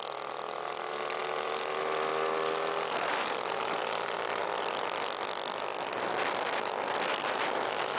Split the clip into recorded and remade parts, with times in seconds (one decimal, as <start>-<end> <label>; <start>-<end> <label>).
0.0-8.0 recorded